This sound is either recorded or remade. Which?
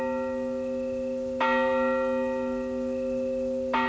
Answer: recorded